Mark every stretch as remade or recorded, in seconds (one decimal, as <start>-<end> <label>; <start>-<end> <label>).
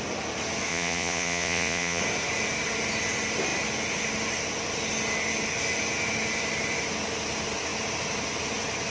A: 0.0-0.7 recorded; 0.7-2.0 remade; 2.0-8.9 recorded